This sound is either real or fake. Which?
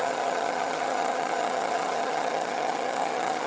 fake